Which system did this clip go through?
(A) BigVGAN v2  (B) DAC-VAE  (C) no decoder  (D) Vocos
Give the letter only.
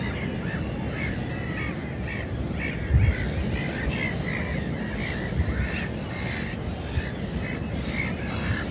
C